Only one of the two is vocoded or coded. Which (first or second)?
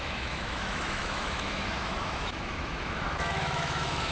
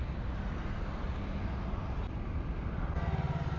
first